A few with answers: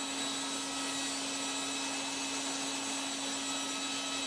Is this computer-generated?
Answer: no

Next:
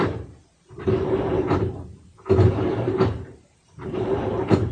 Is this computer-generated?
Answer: yes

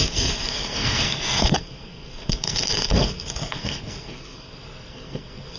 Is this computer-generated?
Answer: yes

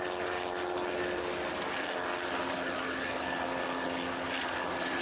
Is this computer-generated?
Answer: no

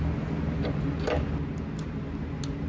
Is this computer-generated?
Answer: no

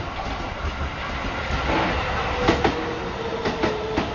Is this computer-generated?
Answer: no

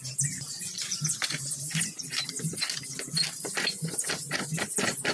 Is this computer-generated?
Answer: no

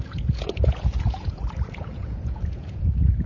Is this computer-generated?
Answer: yes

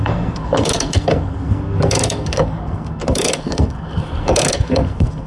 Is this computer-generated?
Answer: yes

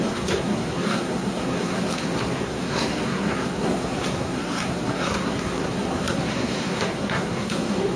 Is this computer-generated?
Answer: yes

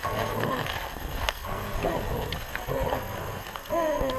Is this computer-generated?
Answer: yes